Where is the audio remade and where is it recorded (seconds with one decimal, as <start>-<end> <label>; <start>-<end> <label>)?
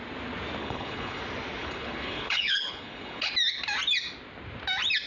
0.0-0.6 recorded; 0.6-1.2 remade; 1.2-1.6 recorded; 1.6-3.3 remade; 3.3-5.1 recorded